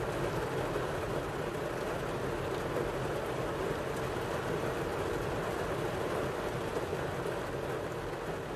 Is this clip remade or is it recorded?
recorded